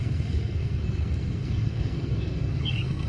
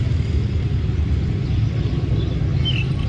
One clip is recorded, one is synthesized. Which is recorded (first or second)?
second